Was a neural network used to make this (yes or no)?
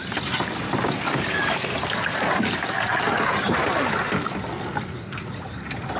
no